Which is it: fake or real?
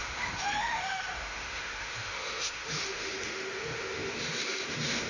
fake